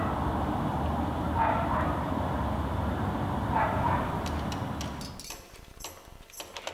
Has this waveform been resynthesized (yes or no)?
no